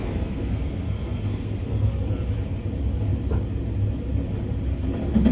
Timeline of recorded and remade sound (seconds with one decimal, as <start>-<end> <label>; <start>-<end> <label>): 0.0-1.9 remade; 1.9-5.3 recorded

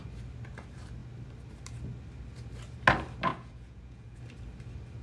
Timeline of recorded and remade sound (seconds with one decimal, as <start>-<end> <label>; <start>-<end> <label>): 0.0-3.3 recorded; 3.3-4.2 remade; 4.2-5.0 recorded

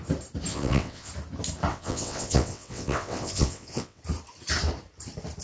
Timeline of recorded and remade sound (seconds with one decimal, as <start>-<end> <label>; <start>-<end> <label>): 0.0-0.5 recorded; 0.5-1.1 remade; 1.1-1.7 recorded; 1.7-4.0 remade; 4.0-5.4 recorded

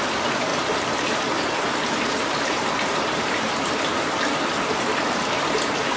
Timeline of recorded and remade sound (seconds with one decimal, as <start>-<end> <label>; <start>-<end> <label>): 0.0-0.5 recorded; 0.5-4.1 remade; 4.1-6.0 recorded

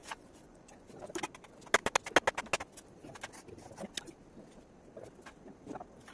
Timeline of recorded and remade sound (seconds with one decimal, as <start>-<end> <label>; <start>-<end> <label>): 0.0-1.0 remade; 1.0-6.1 recorded

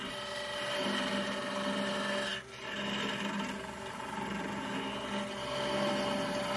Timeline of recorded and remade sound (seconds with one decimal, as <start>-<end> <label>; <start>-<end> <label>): 0.0-6.6 recorded

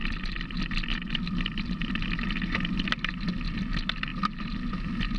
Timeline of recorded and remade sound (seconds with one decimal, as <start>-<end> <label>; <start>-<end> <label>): 0.0-3.1 remade; 3.1-5.2 recorded